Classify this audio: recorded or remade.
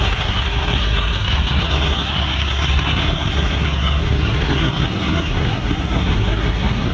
remade